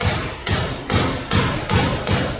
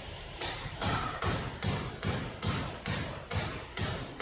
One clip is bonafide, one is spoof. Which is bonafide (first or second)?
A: first